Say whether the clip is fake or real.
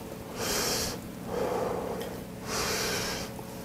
real